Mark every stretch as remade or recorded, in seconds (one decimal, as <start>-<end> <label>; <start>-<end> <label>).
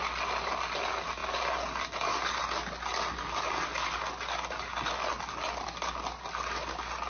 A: 0.0-7.1 recorded